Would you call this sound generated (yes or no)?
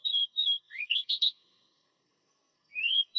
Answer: yes